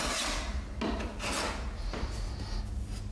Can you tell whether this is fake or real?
real